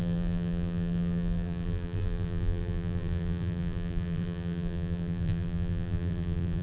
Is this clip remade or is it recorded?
remade